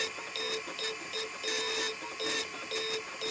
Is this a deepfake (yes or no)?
no